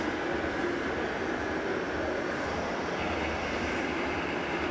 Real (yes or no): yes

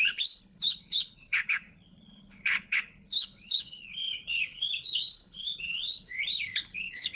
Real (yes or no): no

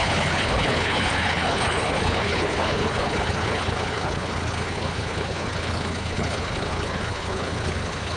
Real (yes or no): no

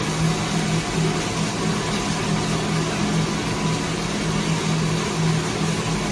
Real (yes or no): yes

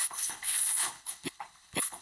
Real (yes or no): no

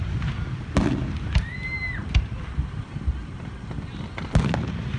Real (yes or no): yes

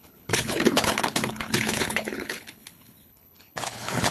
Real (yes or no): no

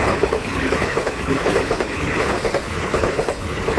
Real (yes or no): no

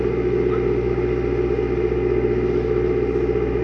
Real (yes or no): yes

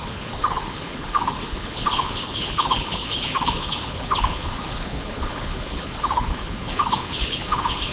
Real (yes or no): no